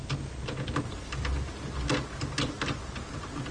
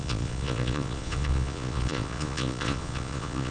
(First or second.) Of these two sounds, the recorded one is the first